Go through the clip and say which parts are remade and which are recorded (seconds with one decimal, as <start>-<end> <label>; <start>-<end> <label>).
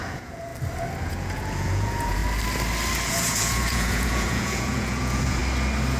0.0-0.5 remade; 0.5-1.1 recorded; 1.1-2.2 remade; 2.2-3.1 recorded; 3.1-5.4 remade; 5.4-6.0 recorded